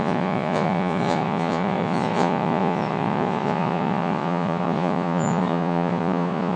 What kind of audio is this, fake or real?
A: fake